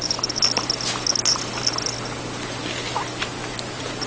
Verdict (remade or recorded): recorded